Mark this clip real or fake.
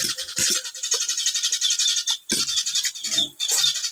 real